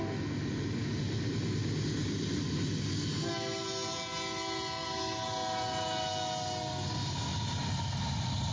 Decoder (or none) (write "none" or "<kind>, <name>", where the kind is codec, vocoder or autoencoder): none